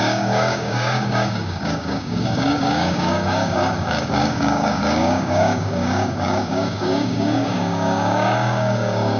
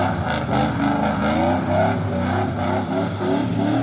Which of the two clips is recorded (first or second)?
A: second